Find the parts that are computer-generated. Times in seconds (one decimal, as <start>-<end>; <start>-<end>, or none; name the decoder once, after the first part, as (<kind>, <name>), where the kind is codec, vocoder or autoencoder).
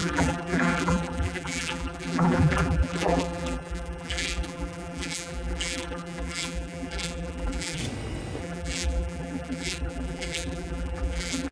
0.0-7.8 (vocoder, BigVGAN v2); 8.4-11.5